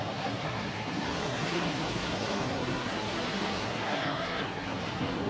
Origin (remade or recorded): remade